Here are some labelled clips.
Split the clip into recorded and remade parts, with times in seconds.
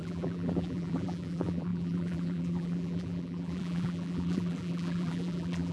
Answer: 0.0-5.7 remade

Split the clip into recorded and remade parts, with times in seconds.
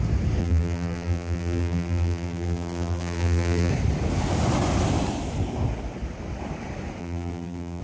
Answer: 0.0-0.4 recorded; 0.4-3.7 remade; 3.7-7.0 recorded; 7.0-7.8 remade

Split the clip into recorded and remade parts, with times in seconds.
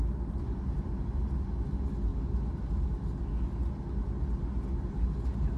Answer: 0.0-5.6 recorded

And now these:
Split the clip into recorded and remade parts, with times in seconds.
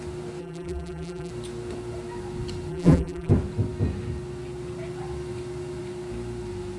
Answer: 0.0-0.4 recorded; 0.4-1.3 remade; 1.3-2.7 recorded; 2.7-3.3 remade; 3.3-6.8 recorded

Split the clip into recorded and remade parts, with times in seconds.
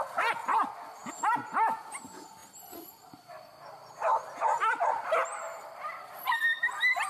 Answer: 0.0-2.4 recorded; 2.4-6.4 remade; 6.4-7.1 recorded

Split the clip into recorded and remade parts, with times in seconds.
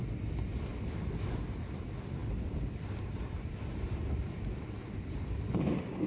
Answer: 0.0-2.2 recorded; 2.2-6.1 remade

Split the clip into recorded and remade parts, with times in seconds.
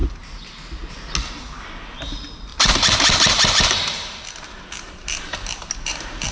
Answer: 0.0-2.5 recorded; 2.5-6.3 remade